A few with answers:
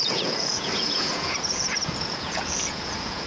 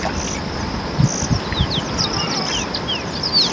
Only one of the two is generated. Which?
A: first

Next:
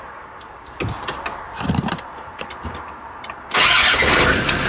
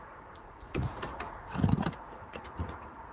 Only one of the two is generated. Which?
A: second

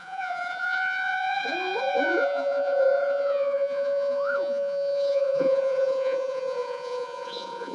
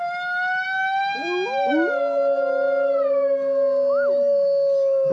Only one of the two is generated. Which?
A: first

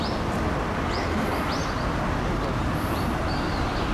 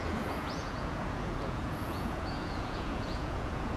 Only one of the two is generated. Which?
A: second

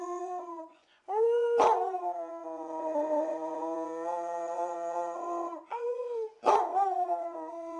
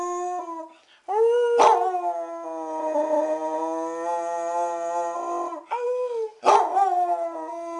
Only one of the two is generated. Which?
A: first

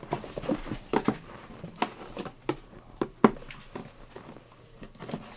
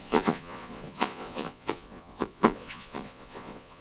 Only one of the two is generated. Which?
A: second